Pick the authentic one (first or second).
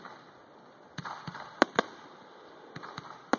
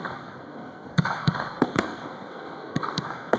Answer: first